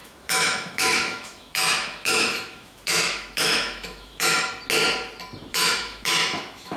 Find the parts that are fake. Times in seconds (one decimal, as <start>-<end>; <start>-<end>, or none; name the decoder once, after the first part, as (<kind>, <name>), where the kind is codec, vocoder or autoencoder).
0.0-4.5 (autoencoder, DAC-VAE); 5.5-6.8